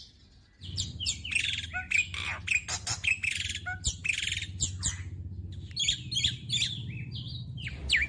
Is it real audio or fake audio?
real